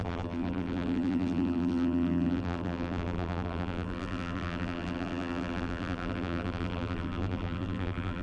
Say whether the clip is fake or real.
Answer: fake